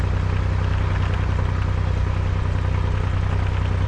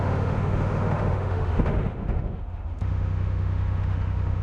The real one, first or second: first